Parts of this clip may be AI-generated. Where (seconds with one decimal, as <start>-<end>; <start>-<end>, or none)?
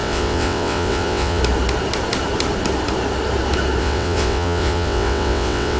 0.0-1.4; 3.8-5.8